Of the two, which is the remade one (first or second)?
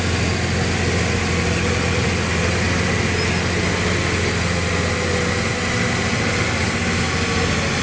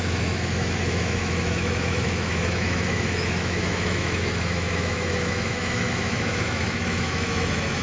second